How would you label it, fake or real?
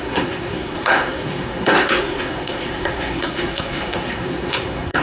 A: fake